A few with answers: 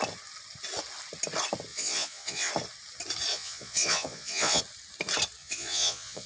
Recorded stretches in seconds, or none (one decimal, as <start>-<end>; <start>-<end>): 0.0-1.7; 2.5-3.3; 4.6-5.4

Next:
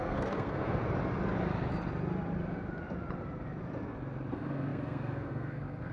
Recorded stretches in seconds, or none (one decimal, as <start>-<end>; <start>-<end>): 0.8-4.3

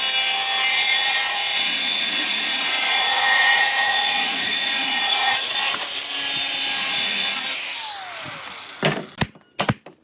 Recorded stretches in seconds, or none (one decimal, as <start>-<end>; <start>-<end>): 0.0-0.7; 5.7-6.8; 7.6-10.0

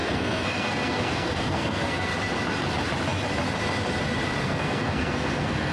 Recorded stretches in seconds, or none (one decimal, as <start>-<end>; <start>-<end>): 2.1-4.4

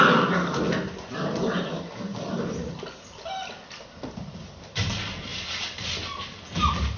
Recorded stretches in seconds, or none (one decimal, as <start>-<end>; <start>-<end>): 0.0-7.0

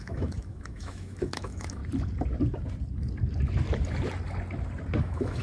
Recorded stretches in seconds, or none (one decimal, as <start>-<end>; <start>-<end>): 1.8-5.0

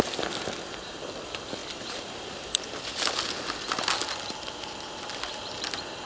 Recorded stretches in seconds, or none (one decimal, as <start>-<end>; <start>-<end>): 0.0-6.1